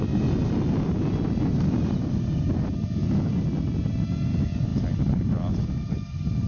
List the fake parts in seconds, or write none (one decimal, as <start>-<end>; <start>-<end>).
none